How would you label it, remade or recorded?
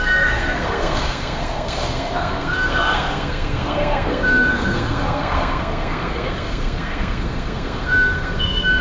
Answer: remade